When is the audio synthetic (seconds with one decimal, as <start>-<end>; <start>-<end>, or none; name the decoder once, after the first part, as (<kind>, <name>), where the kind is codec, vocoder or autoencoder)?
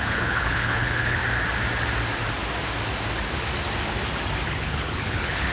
0.0-1.2 (codec, HILCodec); 4.5-5.5